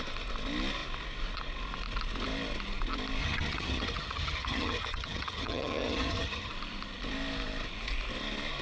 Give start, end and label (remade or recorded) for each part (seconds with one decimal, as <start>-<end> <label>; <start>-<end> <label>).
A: 0.0-3.2 recorded; 3.2-6.5 remade; 6.5-8.6 recorded